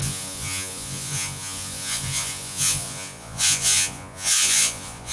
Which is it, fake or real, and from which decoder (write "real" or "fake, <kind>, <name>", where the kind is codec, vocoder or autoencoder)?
fake, vocoder, Vocos